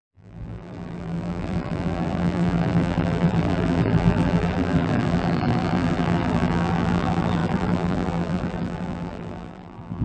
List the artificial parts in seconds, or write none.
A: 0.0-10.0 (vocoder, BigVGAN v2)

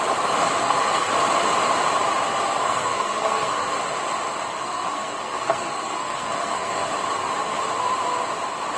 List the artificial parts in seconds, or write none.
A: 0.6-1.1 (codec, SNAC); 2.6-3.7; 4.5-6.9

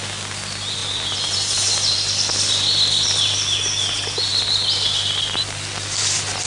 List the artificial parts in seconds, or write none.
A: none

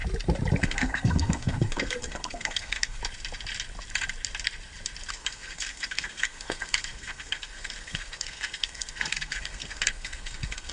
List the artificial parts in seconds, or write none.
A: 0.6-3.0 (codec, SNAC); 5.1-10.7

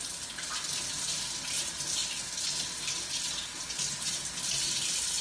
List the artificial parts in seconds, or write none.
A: none

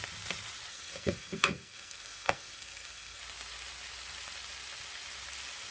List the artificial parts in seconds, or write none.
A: 0.7-3.2 (codec, SNAC)

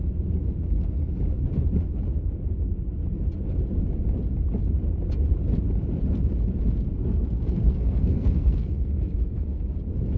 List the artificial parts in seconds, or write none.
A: 7.0-9.6 (codec, SNAC)

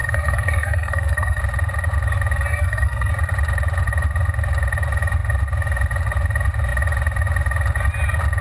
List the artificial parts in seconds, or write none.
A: 0.0-1.4 (codec, SNAC); 2.5-3.1